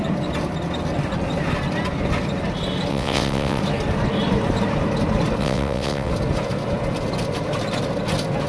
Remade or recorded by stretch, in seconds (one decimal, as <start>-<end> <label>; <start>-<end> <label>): 0.0-2.9 recorded; 2.9-3.6 remade; 3.6-5.4 recorded; 5.4-6.1 remade; 6.1-8.5 recorded